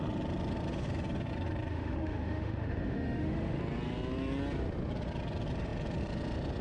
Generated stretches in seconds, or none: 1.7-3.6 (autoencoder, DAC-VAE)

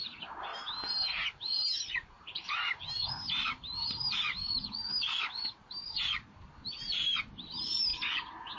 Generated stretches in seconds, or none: 0.5-4.5 (vocoder, BigVGAN v2)

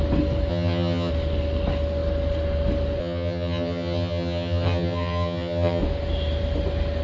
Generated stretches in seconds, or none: 0.5-1.1 (vocoder, HiFi-GAN); 3.0-5.8

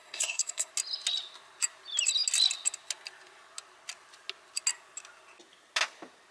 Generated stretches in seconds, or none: 0.0-0.7 (codec, SNAC)

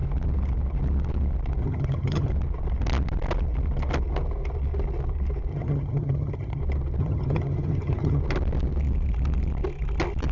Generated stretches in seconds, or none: 1.6-2.3 (vocoder, HiFi-GAN); 5.5-6.6; 7.0-8.2